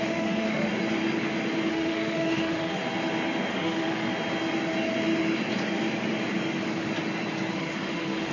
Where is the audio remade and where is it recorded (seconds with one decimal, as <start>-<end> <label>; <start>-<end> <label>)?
0.0-0.7 remade; 0.7-1.7 recorded; 1.7-2.8 remade; 2.8-3.5 recorded; 3.5-4.1 remade; 4.1-7.5 recorded; 7.5-8.3 remade